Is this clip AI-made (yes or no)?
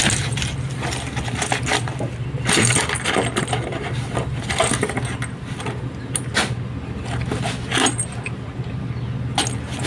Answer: no